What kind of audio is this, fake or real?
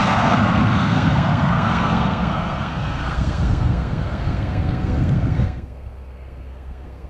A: fake